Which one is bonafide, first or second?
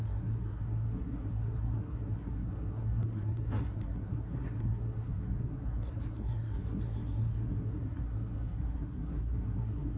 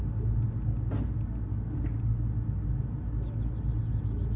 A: second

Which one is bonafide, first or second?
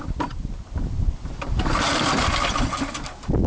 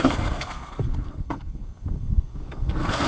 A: first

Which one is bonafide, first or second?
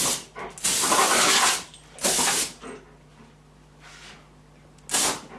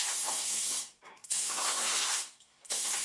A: first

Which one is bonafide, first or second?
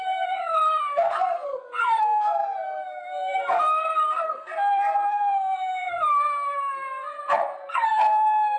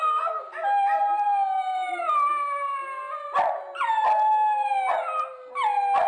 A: second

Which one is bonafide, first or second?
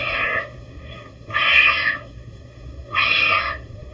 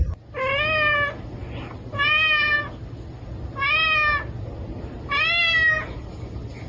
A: second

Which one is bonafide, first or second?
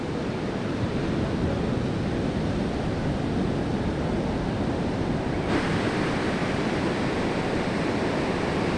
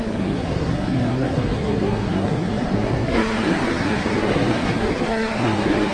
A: first